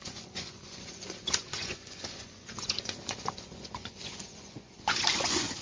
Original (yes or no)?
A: no